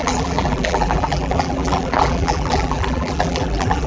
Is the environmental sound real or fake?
fake